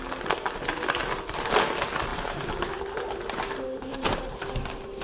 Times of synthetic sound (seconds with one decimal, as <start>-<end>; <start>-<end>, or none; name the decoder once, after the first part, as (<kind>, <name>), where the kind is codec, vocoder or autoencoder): 2.1-2.7 (vocoder, BigVGAN v2); 3.9-4.5